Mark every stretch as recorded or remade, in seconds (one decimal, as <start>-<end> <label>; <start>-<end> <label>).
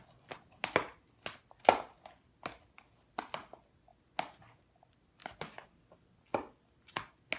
0.0-7.4 recorded